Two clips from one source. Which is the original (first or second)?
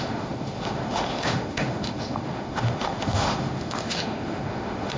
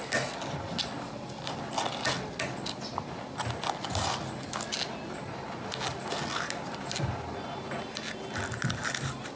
second